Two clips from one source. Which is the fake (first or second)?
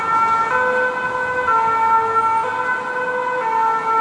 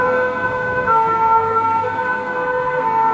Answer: second